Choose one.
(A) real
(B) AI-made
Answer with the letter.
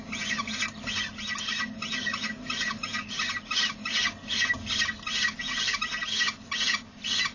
A